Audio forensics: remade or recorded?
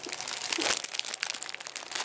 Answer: recorded